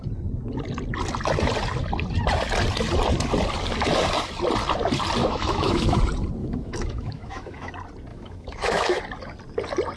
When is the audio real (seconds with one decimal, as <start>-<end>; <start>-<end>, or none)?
0.0-5.2; 6.0-6.4; 7.7-8.1; 9.0-10.0